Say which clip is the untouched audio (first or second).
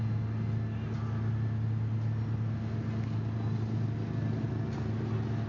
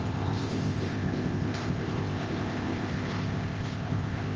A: first